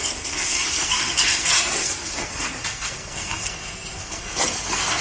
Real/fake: fake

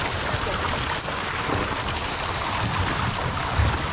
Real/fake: real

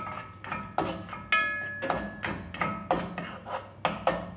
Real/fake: real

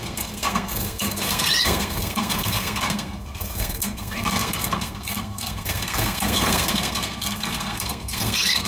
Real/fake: fake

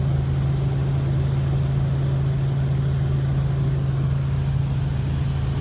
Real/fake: real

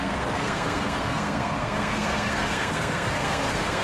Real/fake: fake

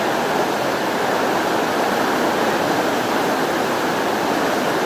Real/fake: real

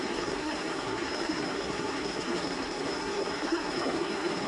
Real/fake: fake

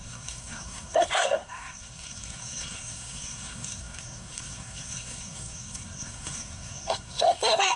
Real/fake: fake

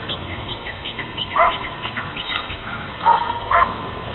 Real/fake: fake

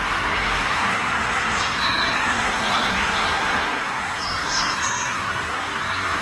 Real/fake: fake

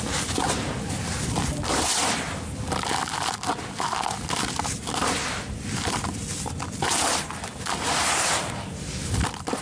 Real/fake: real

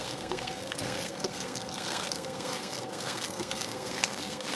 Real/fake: fake